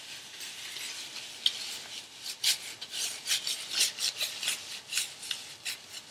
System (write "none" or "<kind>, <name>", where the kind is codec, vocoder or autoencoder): none